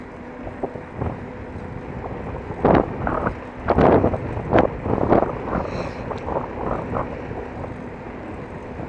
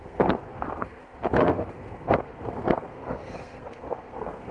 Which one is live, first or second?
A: first